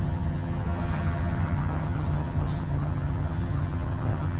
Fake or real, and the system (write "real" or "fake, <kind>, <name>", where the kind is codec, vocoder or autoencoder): fake, vocoder, HiFi-GAN